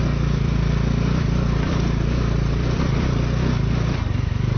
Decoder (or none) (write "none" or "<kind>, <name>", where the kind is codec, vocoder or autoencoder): vocoder, BigVGAN v2